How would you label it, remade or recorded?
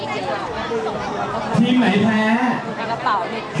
recorded